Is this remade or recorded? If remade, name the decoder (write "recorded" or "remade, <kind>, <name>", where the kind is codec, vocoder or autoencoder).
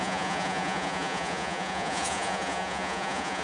remade, vocoder, Vocos